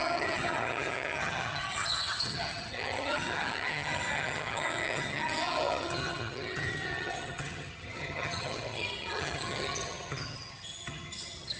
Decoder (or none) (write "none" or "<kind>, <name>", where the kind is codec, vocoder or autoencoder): vocoder, HiFi-GAN